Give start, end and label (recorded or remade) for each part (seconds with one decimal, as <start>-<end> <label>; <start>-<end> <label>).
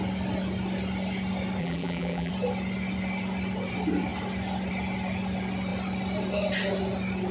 0.0-1.6 recorded; 1.6-2.3 remade; 2.3-7.3 recorded